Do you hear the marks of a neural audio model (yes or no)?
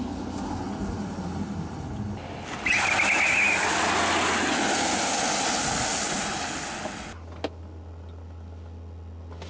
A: no